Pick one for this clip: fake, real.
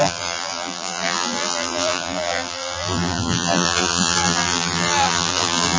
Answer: fake